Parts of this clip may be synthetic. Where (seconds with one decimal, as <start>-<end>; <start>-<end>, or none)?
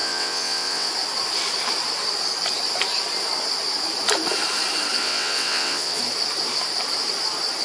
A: 0.0-0.9; 5.0-6.0